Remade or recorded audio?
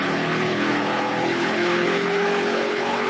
remade